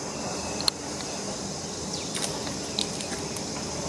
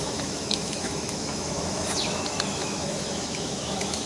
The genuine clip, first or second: first